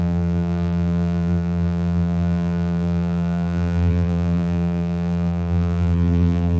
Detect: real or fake fake